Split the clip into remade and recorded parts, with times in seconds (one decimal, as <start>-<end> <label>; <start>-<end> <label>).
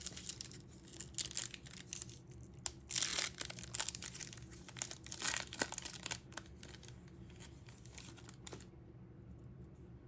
0.0-10.1 recorded